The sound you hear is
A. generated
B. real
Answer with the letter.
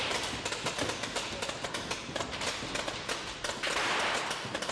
B